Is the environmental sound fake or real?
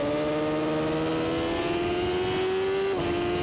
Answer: real